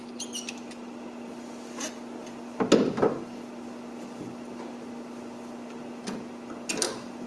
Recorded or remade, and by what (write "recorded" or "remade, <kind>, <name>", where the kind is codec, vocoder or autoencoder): recorded